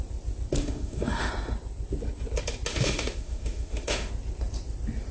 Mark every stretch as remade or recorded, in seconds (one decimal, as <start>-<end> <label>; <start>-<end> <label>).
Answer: 0.0-0.6 recorded; 0.6-1.3 remade; 1.3-2.7 recorded; 2.7-4.1 remade; 4.1-5.1 recorded